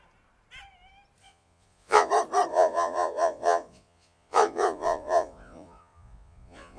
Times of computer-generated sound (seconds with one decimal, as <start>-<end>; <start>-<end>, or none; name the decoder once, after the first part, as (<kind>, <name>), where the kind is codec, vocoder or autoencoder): 1.2-2.1 (vocoder, Vocos); 2.5-6.8